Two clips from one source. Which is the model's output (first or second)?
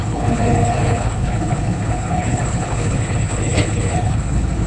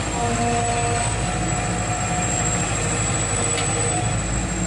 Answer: first